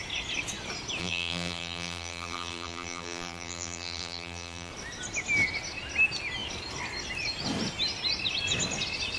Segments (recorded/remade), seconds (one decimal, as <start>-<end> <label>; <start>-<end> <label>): 0.0-1.0 recorded; 1.0-4.7 remade; 4.7-9.2 recorded